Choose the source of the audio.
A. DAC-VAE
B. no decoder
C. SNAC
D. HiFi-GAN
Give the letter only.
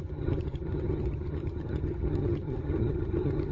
D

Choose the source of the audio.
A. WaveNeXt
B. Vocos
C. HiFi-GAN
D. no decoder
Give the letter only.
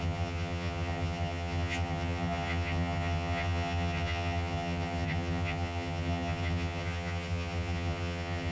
C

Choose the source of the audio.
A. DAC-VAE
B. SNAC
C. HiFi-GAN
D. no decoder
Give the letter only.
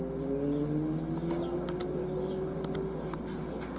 D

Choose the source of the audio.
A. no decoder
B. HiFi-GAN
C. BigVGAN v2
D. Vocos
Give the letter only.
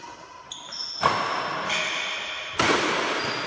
A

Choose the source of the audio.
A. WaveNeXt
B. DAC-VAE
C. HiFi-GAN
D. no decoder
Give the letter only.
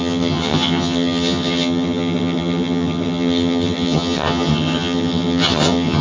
C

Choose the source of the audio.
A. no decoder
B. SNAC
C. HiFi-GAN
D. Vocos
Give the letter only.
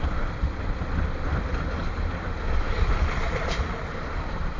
A